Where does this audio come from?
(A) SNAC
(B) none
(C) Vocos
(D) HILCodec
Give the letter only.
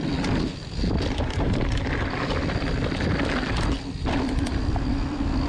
B